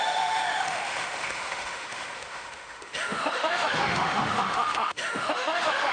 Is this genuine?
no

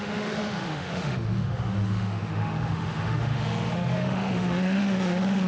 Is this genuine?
no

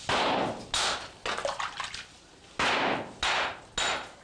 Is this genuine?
yes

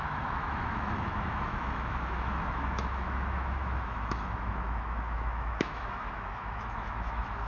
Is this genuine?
no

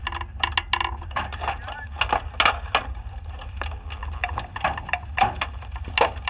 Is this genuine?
yes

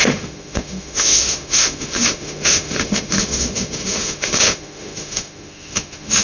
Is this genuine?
no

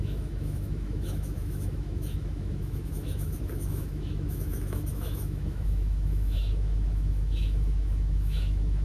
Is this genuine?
no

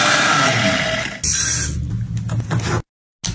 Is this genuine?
yes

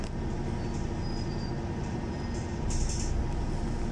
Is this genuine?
yes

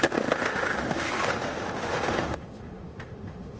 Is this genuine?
no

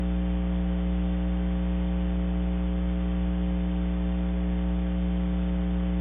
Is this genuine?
yes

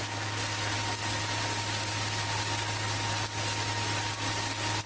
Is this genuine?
yes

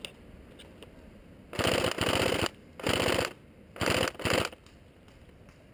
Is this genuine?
yes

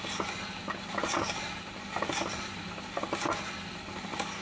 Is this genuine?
yes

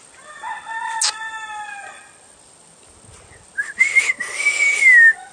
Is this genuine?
yes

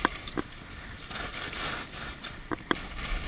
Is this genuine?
yes